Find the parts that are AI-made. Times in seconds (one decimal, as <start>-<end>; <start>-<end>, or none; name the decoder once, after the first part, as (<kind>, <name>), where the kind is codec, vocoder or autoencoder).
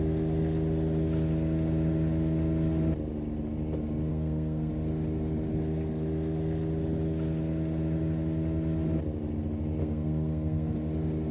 4.1-4.7 (codec, SNAC); 9.8-10.7